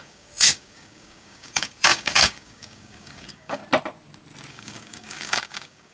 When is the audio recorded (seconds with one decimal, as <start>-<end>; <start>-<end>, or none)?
3.6-4.5